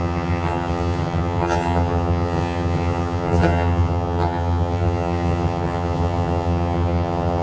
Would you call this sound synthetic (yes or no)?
yes